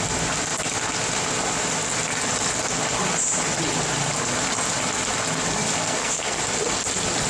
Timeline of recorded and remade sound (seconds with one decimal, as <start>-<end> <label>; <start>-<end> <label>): 0.0-5.8 recorded; 5.8-6.4 remade; 6.4-7.3 recorded